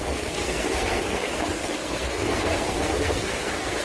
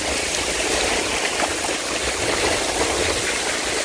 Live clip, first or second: second